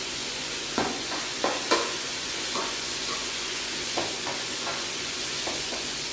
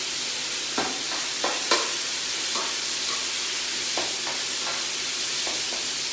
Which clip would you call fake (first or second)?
first